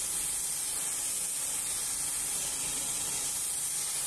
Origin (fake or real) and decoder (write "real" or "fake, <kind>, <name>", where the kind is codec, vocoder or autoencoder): real